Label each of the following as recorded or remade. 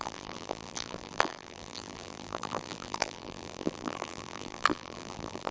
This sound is remade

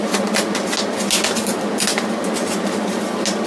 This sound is recorded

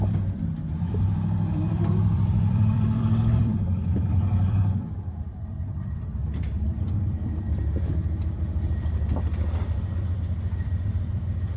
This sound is remade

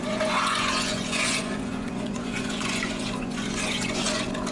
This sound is remade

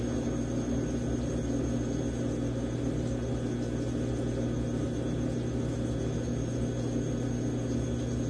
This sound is recorded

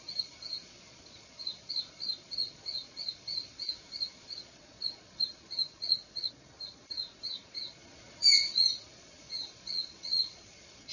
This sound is remade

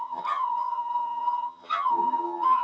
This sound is remade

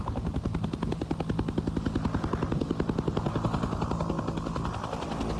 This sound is recorded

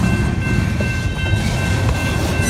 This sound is recorded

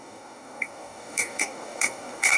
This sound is remade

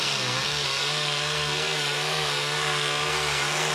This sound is remade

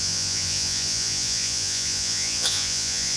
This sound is remade